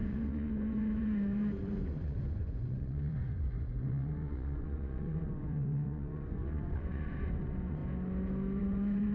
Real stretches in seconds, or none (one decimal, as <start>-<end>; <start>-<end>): 7.8-8.6